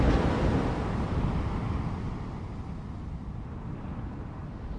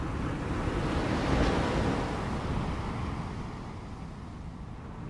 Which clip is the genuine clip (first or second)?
second